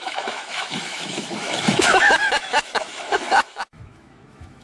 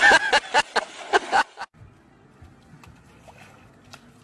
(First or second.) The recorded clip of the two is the second